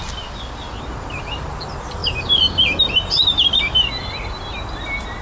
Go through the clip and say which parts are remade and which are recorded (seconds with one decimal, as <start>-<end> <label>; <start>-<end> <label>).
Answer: 0.0-5.2 recorded